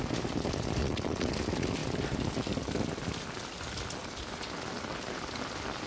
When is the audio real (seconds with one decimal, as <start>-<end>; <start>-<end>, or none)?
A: 0.0-0.8; 1.3-5.9